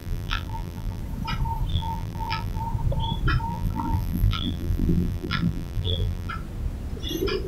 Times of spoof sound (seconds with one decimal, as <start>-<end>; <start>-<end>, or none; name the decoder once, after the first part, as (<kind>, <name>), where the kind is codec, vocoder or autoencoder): 0.0-1.0 (vocoder, BigVGAN v2); 1.7-2.6; 3.5-6.3